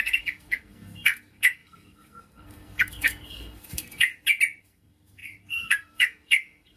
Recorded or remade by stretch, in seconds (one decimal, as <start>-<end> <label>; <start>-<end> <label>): 0.0-4.1 remade; 4.1-4.6 recorded; 4.6-6.8 remade